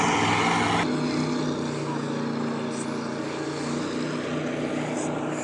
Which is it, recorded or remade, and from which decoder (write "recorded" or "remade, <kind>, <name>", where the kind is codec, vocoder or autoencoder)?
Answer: recorded